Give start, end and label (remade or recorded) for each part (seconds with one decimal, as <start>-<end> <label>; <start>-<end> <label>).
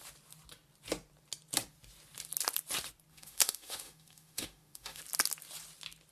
0.0-3.1 recorded; 3.1-5.0 remade; 5.0-6.1 recorded